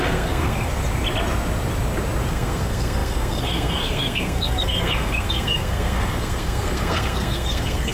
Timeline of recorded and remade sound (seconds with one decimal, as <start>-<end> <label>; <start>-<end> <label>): 0.0-0.8 remade; 0.8-2.3 recorded; 2.3-7.9 remade